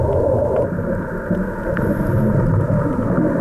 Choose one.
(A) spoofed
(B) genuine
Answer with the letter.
B